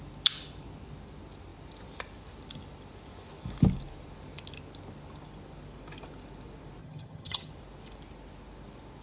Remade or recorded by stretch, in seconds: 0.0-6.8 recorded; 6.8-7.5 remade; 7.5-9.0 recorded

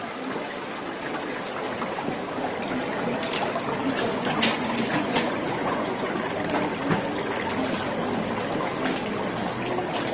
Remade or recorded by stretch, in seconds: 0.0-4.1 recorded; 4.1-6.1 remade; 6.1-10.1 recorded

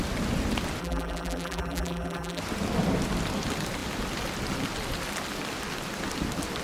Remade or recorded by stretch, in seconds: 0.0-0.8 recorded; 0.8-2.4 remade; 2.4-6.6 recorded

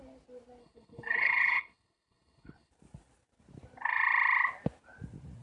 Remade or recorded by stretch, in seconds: 0.0-0.6 recorded; 0.6-2.7 remade; 2.7-5.4 recorded